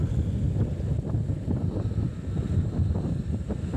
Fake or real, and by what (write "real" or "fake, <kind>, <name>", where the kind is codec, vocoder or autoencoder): real